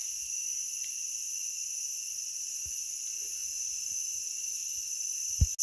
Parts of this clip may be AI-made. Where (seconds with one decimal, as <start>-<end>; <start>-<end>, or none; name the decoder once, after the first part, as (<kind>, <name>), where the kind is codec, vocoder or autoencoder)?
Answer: none